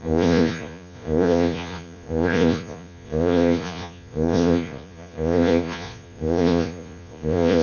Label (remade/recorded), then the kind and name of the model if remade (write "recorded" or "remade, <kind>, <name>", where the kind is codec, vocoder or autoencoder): remade, vocoder, Vocos